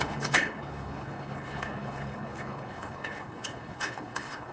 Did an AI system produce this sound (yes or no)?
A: yes